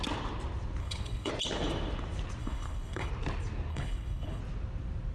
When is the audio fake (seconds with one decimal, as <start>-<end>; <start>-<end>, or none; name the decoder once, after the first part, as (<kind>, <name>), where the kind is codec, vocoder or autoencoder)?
0.8-1.3 (codec, HILCodec); 2.4-3.1; 3.7-4.4